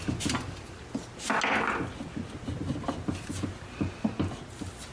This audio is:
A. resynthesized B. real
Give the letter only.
B